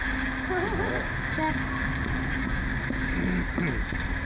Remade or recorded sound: recorded